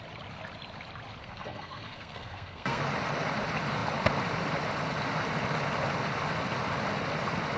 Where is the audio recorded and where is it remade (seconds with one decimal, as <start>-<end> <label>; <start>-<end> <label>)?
0.0-1.2 recorded; 1.2-2.8 remade; 2.8-7.6 recorded